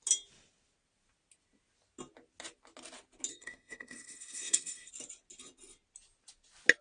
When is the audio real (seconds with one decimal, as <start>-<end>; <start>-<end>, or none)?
0.0-3.3; 4.9-6.8